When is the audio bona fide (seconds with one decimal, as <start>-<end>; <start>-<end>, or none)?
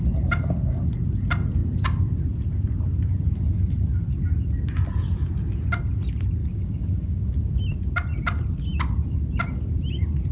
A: 0.0-6.4; 7.3-10.3